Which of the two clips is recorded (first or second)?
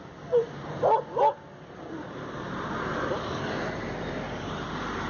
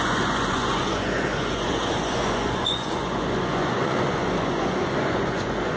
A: first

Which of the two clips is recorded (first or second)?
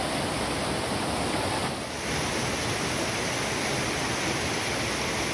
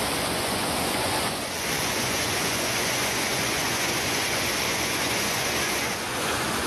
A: first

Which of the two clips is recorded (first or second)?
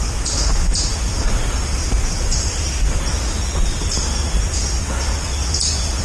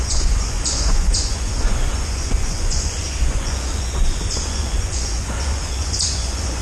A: first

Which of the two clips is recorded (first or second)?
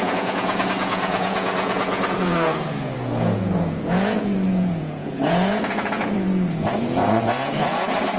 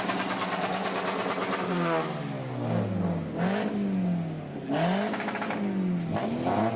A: second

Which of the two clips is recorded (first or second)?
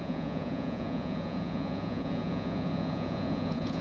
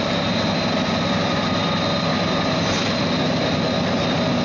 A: second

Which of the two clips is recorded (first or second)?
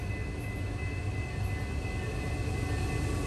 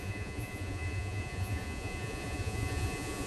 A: first